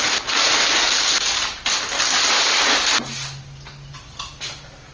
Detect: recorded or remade recorded